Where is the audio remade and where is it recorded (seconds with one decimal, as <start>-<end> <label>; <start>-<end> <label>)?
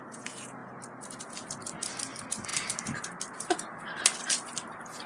0.0-5.1 recorded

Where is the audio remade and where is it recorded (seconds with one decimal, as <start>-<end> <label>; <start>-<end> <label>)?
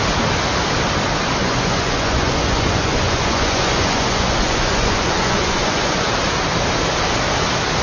0.0-1.4 recorded; 1.4-6.1 remade; 6.1-7.8 recorded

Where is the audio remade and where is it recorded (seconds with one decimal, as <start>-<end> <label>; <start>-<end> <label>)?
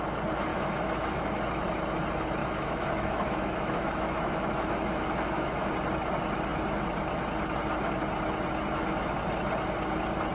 0.0-0.5 recorded; 0.5-1.4 remade; 1.4-2.4 recorded; 2.4-5.7 remade; 5.7-10.3 recorded